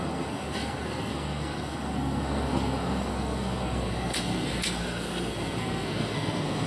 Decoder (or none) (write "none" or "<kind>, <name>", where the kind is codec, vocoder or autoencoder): codec, SNAC